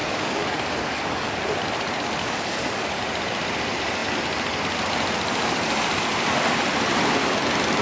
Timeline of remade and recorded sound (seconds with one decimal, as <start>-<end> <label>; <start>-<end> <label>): 0.0-1.3 remade; 1.3-2.2 recorded; 2.2-3.0 remade; 3.0-7.8 recorded

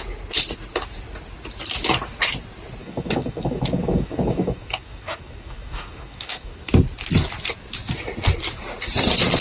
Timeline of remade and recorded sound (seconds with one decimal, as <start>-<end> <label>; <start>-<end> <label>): 0.0-2.8 recorded; 2.8-6.7 remade; 6.7-9.4 recorded